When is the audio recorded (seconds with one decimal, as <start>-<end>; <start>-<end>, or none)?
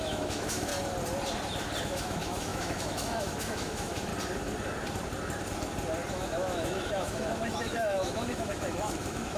0.7-1.8; 4.1-6.1